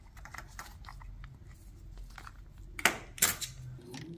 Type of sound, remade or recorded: recorded